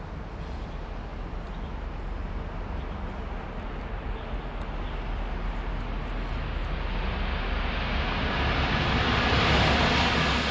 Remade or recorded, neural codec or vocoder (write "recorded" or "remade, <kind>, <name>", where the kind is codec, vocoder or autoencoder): recorded